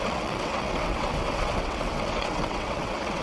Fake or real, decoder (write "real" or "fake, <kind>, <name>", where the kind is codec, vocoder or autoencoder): fake, vocoder, WaveNeXt